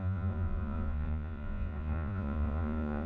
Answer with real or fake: fake